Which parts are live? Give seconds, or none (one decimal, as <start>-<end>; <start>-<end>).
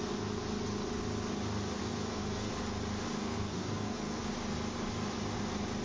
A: 0.0-1.8; 2.5-3.2; 4.3-5.8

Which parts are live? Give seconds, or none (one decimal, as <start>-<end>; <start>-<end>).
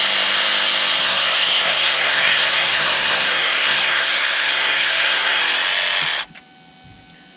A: 0.0-1.0; 5.4-7.4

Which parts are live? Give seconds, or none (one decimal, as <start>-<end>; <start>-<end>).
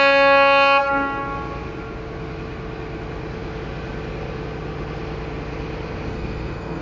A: 0.0-6.1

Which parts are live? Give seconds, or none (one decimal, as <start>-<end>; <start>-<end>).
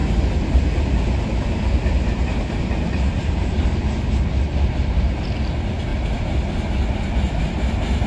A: 0.0-8.1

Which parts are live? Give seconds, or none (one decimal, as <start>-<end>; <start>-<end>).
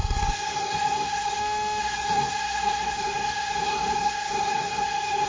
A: 1.4-1.8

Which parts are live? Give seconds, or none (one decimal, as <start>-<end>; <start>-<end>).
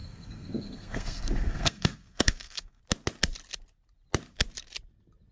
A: 2.8-5.3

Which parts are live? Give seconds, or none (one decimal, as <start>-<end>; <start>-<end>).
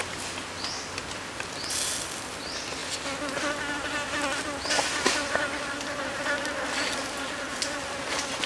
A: 0.0-8.5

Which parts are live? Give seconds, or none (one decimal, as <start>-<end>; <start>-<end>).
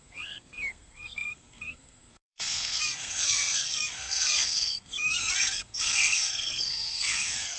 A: none